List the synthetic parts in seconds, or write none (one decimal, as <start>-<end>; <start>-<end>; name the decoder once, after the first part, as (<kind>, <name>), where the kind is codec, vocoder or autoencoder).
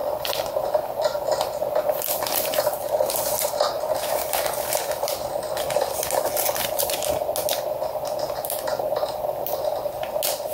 none